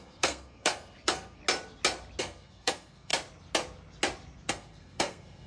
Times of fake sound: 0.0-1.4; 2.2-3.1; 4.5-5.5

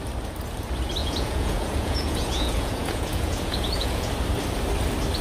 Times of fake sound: 1.0-4.1

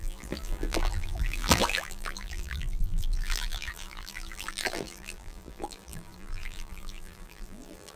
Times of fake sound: 0.0-8.0

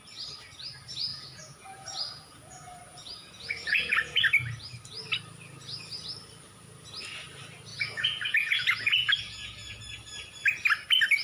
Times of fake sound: 1.1-4.2; 7.7-9.8

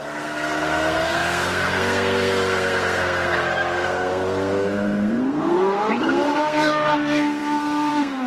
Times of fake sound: 0.0-8.3